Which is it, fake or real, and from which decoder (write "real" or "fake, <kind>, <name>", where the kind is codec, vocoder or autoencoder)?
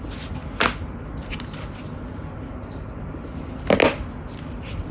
real